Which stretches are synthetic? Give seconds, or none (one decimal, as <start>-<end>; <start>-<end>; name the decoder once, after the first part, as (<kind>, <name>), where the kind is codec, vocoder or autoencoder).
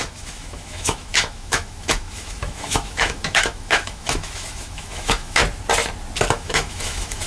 0.0-5.4 (autoencoder, DAC-VAE); 6.3-7.3